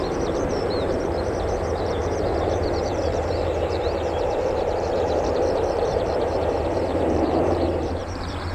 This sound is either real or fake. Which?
fake